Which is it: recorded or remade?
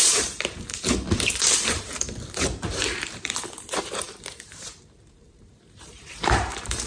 remade